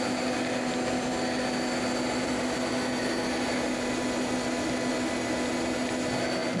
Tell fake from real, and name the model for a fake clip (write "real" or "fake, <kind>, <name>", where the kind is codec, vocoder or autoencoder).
real